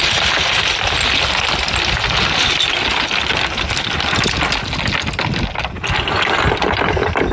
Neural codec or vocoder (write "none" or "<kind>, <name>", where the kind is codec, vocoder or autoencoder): none